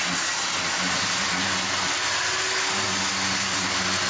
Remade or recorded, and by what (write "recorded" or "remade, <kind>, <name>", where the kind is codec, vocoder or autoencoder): recorded